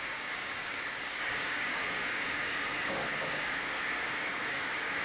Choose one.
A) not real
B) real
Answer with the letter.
A